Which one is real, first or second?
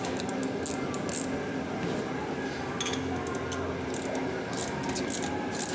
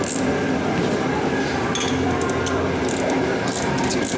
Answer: first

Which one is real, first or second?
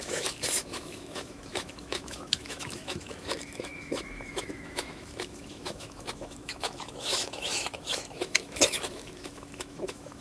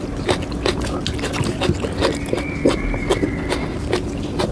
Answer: second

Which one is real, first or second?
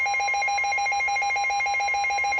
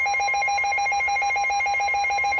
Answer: first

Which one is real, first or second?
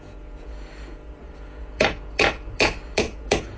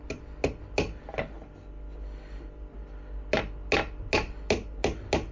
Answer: second